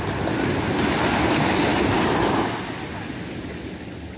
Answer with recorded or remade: recorded